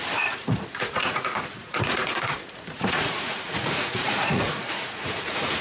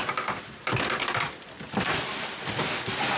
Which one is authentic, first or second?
second